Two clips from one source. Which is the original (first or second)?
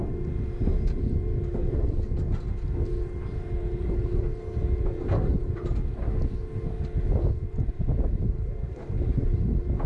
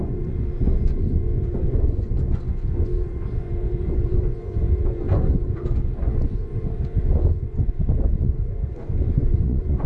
first